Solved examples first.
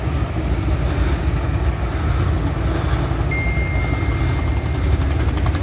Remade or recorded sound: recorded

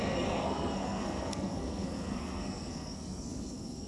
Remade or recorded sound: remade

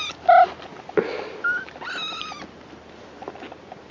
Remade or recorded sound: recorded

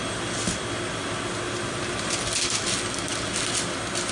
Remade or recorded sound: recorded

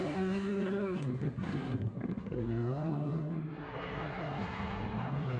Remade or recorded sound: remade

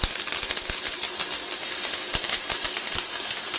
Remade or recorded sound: recorded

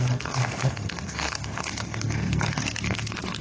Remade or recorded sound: remade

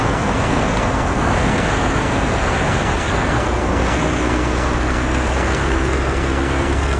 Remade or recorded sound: remade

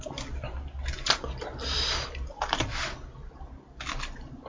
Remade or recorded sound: recorded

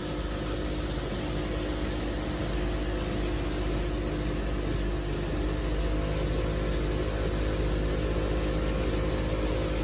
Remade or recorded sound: recorded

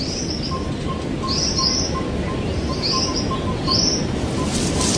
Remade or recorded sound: recorded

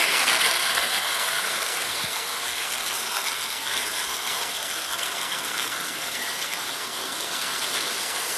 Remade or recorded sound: remade